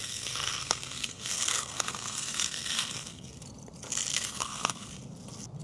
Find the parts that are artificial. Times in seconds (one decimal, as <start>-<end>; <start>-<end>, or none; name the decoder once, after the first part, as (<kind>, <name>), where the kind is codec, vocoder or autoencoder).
0.0-3.4 (codec, SNAC); 4.1-4.9